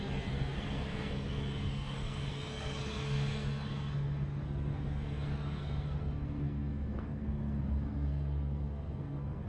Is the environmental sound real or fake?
fake